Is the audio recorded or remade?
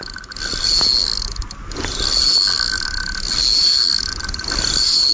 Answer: recorded